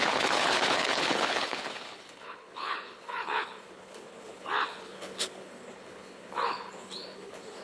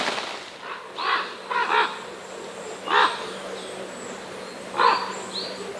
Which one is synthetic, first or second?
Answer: first